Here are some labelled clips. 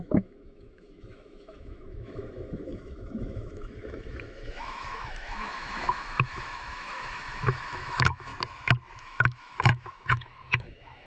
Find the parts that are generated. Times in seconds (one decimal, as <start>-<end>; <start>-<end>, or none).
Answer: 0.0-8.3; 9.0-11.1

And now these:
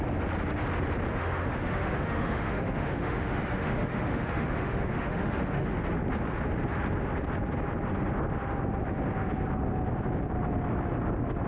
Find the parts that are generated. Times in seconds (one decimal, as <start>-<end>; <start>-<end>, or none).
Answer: 1.1-5.8

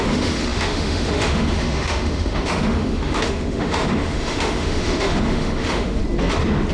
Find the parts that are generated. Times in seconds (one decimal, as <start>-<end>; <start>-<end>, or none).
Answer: 0.0-6.0

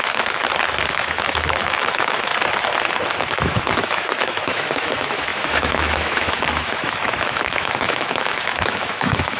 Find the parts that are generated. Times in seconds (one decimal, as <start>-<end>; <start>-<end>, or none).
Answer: 0.0-0.4; 0.9-2.3; 3.2-9.4

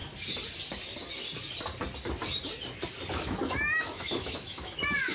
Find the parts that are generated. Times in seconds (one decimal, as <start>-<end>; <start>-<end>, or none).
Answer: 3.1-5.1

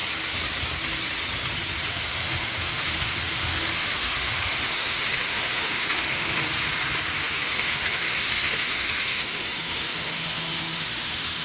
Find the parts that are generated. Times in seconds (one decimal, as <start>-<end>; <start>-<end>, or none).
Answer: 1.9-6.4; 7.1-11.4

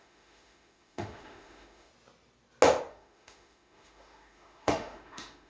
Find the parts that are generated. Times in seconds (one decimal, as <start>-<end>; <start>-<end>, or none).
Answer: 0.0-1.9; 2.9-5.5